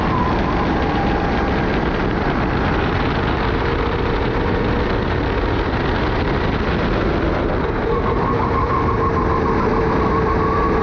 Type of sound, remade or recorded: recorded